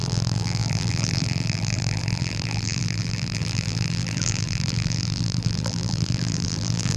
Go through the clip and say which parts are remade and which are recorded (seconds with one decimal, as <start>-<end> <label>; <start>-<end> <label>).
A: 0.0-7.0 remade